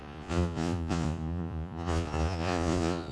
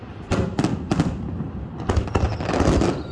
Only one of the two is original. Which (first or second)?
second